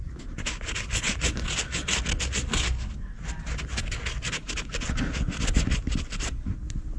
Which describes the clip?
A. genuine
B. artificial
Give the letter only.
A